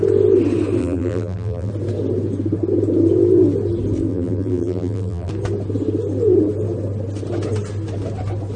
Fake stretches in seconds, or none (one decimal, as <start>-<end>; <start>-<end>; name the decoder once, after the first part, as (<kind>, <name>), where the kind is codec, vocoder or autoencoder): 0.8-1.7 (vocoder, BigVGAN v2); 4.1-5.3